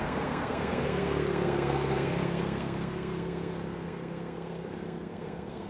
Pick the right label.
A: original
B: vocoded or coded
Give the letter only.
B